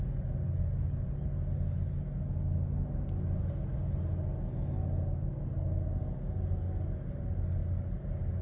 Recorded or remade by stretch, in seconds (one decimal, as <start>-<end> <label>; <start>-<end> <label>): 0.0-8.4 recorded